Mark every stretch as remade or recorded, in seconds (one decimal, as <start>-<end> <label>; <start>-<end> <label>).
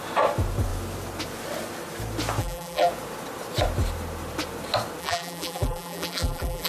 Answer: 0.0-2.4 recorded; 2.4-2.9 remade; 2.9-5.0 recorded; 5.0-6.7 remade